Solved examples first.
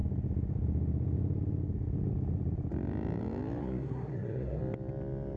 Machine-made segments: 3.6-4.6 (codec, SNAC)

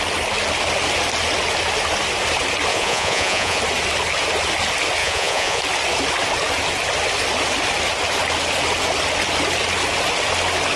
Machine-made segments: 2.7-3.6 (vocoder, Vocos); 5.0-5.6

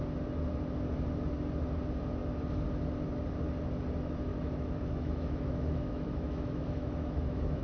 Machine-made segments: 4.3-7.6 (autoencoder, DAC-VAE)